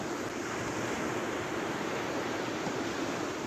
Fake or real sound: real